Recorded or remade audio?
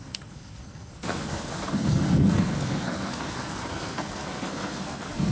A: remade